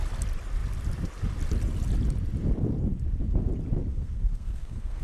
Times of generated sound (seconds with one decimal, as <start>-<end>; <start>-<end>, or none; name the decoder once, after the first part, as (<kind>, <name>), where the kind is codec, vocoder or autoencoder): 3.9-5.0 (codec, SNAC)